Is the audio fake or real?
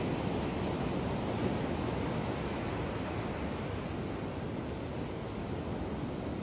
real